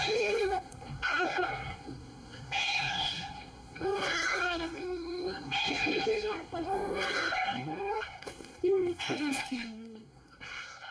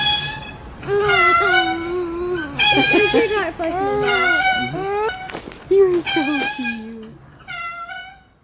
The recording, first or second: second